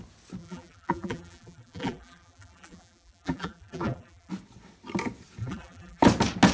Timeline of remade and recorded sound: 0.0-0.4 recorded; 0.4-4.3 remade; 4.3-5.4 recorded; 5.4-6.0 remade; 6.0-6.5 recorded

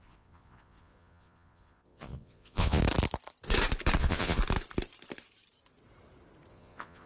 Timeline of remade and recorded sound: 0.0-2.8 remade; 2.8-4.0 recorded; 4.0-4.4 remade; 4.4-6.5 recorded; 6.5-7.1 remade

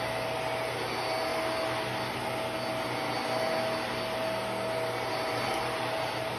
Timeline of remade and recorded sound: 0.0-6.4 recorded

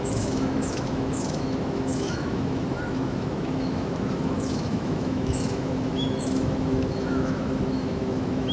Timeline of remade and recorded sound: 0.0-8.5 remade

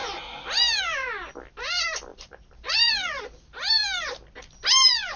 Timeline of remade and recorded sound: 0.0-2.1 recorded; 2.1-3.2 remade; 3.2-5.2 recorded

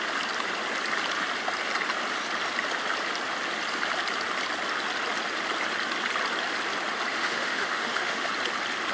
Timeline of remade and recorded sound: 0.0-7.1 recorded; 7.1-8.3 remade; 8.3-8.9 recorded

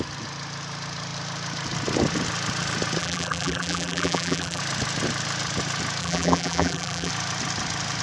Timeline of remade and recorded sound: 0.0-3.0 recorded; 3.0-4.6 remade; 4.6-6.0 recorded; 6.0-7.1 remade; 7.1-8.0 recorded